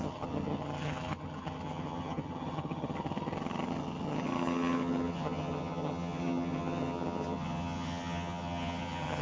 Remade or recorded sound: remade